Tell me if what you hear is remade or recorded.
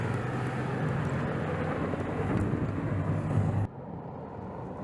recorded